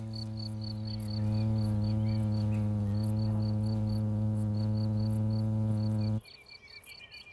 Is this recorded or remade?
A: recorded